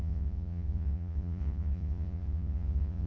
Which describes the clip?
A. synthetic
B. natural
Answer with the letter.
A